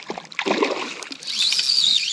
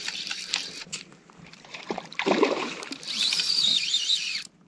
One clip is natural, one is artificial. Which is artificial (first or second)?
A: second